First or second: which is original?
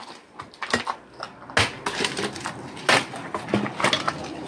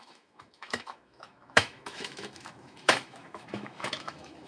first